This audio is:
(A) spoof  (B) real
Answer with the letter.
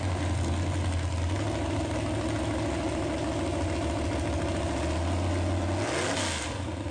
B